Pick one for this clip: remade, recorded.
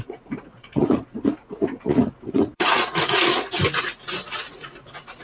remade